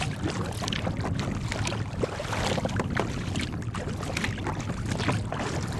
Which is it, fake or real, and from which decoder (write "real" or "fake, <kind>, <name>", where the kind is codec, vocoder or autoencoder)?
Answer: real